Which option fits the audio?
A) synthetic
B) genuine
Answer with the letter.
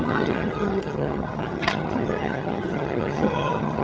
A